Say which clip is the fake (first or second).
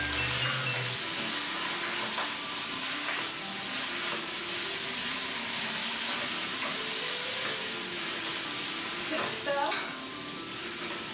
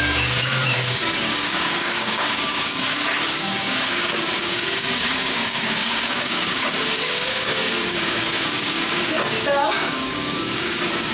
second